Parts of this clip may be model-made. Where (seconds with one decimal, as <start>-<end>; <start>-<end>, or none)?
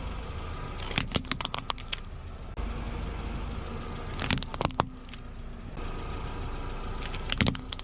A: none